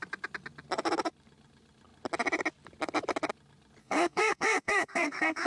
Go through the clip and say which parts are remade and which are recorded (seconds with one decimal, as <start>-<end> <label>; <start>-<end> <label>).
0.0-3.8 recorded; 3.8-5.5 remade